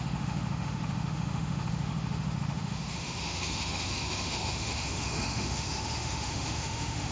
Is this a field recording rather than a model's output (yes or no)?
no